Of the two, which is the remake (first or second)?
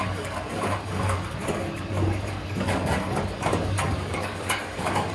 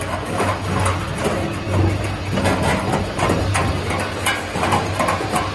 first